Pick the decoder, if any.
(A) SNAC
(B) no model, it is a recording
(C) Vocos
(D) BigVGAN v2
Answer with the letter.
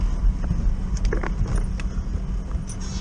B